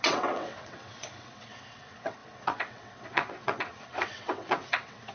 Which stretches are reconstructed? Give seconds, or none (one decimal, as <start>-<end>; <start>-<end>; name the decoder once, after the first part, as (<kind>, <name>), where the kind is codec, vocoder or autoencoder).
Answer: 0.0-5.1 (vocoder, WaveNeXt)